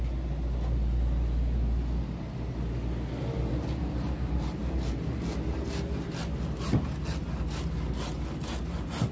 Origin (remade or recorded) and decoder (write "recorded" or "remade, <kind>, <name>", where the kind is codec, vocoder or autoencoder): recorded